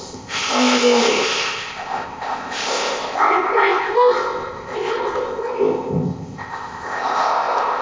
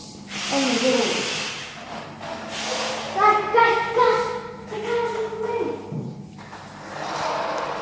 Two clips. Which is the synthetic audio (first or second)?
first